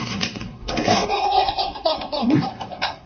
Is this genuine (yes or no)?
no